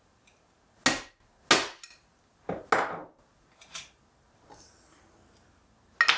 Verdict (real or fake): real